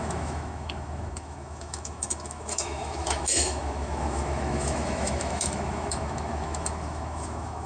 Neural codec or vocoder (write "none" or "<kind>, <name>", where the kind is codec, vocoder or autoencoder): autoencoder, DAC-VAE